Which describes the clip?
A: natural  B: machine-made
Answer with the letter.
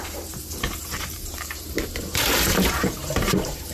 B